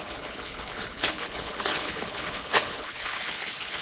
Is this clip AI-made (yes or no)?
yes